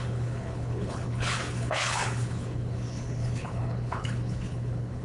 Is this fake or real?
fake